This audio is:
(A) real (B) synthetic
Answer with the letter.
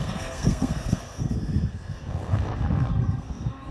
B